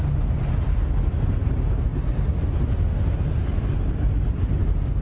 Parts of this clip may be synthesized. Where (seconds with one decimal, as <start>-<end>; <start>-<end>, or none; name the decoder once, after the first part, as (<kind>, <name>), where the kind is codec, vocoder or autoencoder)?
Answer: none